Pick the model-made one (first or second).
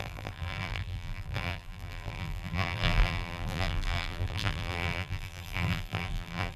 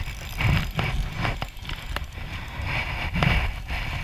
first